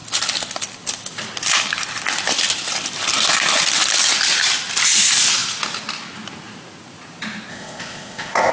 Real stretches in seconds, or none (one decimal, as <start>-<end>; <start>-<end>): 0.0-7.5